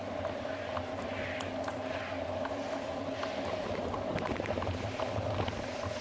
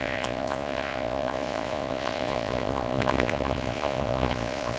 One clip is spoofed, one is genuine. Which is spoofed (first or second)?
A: second